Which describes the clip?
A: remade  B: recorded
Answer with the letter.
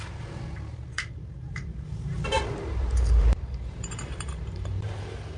A